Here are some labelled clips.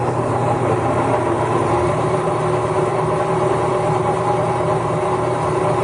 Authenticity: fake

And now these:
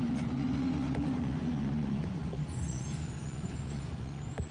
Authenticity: fake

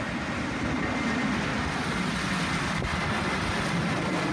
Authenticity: real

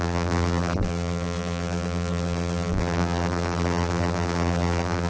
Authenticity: fake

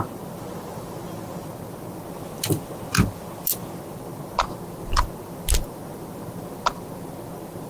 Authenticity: real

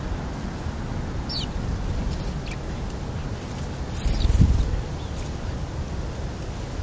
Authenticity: real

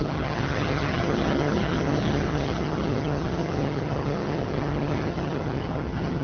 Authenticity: fake